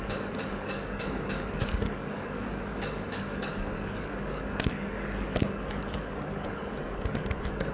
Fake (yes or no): yes